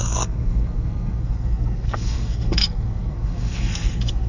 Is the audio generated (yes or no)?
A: yes